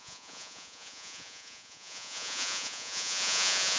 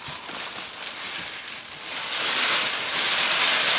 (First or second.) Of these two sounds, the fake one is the first